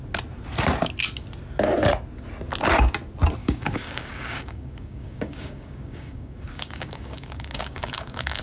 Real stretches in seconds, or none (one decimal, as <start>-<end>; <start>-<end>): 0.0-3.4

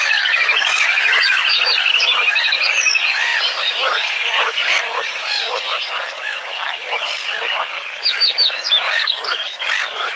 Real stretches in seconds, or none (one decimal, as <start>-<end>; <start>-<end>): none

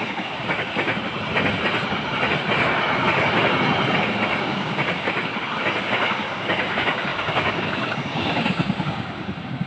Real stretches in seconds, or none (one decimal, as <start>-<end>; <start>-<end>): 0.9-4.4; 5.3-5.8